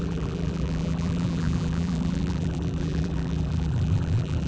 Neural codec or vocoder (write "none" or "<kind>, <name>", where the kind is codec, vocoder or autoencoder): vocoder, BigVGAN v2